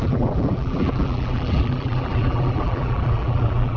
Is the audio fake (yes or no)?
yes